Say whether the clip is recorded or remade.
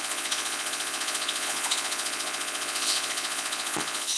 remade